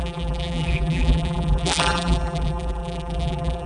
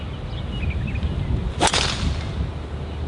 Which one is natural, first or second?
second